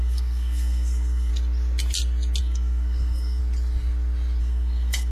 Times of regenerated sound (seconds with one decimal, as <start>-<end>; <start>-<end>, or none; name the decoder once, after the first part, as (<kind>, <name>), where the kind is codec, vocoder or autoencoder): 0.0-1.3 (codec, SNAC); 2.4-3.4; 4.4-5.1